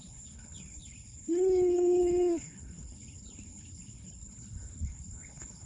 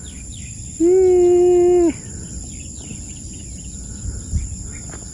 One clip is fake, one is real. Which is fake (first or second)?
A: first